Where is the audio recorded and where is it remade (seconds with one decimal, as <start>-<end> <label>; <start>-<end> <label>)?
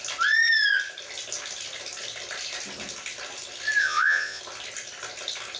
0.0-3.8 recorded; 3.8-4.4 remade; 4.4-5.6 recorded